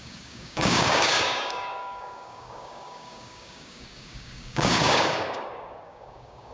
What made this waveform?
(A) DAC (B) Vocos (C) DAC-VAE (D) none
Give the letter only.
A